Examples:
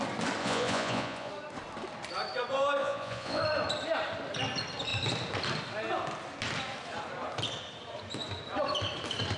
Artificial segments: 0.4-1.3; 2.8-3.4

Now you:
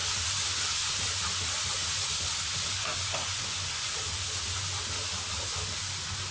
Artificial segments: 2.9-3.9

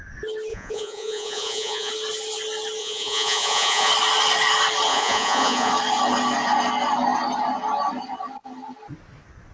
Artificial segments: 0.5-1.9; 2.8-3.9; 4.9-5.7

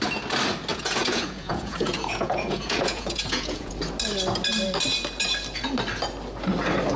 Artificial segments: 0.7-3.7

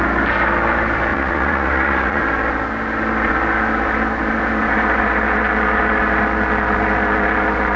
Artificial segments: 1.1-2.2

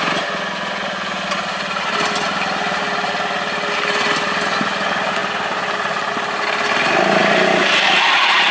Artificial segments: none

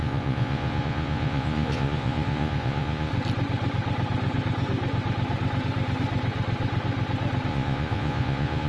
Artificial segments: 0.0-3.1; 7.5-8.7

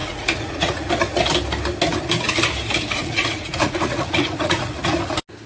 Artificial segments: 0.0-0.9; 3.0-5.1